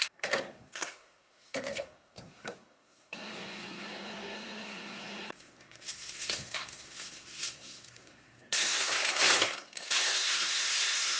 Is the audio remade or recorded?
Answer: remade